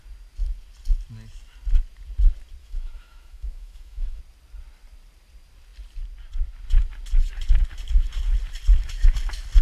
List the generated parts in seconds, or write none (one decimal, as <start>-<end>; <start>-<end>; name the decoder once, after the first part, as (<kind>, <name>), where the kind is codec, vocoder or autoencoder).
2.6-4.2 (autoencoder, DAC-VAE)